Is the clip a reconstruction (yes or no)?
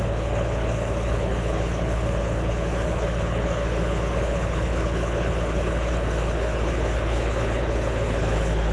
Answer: yes